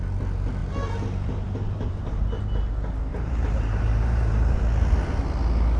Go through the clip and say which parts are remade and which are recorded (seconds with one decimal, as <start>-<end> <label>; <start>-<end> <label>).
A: 0.0-0.6 recorded; 0.6-2.4 remade; 2.4-3.1 recorded; 3.1-4.6 remade; 4.6-5.8 recorded